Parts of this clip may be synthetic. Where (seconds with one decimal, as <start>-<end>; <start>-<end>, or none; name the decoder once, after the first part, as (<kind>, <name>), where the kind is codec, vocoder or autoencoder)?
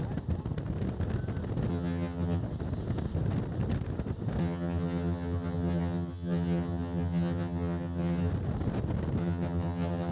1.7-2.4 (vocoder, HiFi-GAN); 4.4-8.3; 9.2-10.1